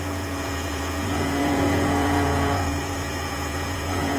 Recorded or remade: remade